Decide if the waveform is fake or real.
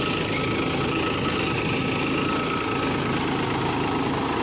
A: real